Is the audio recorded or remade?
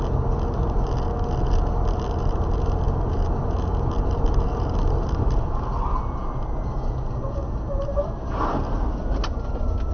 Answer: recorded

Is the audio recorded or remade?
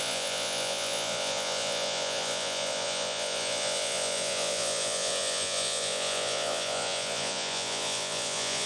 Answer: remade